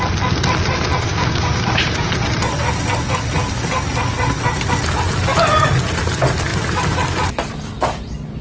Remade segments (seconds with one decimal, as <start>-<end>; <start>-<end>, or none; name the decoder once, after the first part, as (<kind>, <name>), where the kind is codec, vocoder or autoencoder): 1.1-2.1 (codec, DAC)